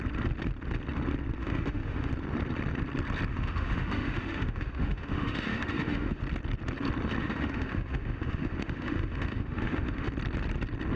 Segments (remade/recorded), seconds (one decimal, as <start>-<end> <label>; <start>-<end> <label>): 0.0-1.4 recorded; 1.4-2.1 remade; 2.1-3.3 recorded; 3.3-6.2 remade; 6.2-7.2 recorded; 7.2-10.1 remade; 10.1-11.0 recorded